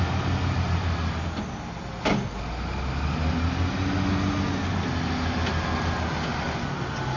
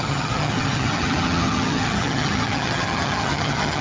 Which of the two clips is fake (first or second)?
second